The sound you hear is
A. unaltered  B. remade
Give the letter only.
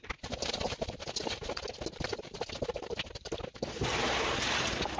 A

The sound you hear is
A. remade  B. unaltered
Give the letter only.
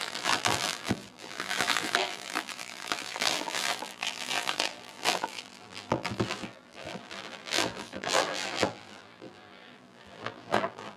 A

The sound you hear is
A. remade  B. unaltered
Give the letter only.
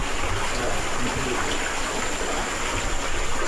B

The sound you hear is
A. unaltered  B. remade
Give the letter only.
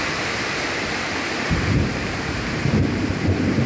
B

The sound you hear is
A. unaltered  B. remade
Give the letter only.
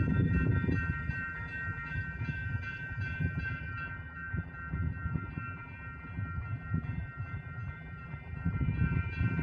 B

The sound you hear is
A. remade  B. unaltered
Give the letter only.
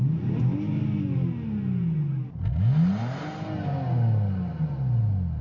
B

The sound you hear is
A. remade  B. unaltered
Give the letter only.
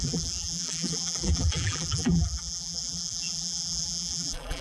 A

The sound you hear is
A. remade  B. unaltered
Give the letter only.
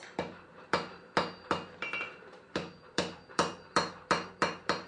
A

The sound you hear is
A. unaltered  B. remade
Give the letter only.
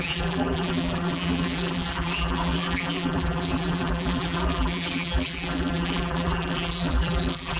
B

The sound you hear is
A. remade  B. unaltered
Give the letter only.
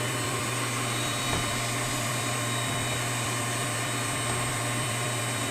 A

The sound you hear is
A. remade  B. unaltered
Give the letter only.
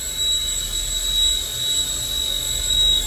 B